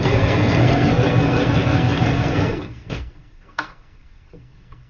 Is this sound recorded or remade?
remade